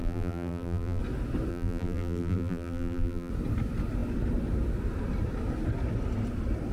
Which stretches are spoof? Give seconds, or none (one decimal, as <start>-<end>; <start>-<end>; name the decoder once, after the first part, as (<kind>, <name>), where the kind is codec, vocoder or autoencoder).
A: 0.0-1.0 (vocoder, BigVGAN v2); 1.5-3.3

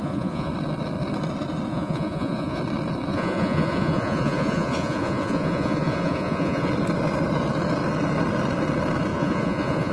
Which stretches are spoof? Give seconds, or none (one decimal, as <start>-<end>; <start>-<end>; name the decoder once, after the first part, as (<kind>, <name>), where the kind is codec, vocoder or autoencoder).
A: 0.0-0.5 (vocoder, Vocos); 1.7-2.6; 3.1-6.7; 9.1-9.9